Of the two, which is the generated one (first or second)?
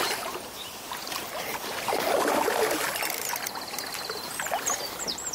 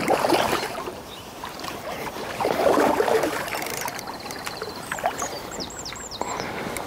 second